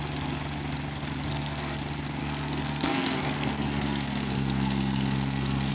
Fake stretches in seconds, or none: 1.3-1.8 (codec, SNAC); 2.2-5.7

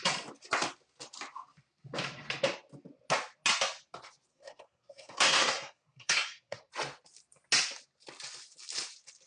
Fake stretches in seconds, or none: 4.3-6.7 (codec, SNAC)

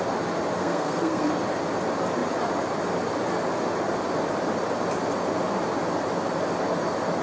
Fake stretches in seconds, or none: 0.6-1.3 (codec, SNAC)

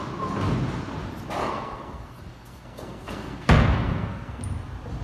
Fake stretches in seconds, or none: 1.4-4.4 (codec, SNAC)